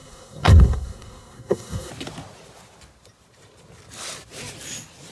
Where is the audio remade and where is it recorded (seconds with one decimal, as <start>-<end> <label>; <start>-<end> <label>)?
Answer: 0.0-1.9 remade; 1.9-5.1 recorded